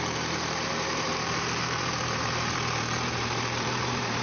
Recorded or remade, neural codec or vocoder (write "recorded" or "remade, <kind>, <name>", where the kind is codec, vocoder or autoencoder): remade, vocoder, BigVGAN v2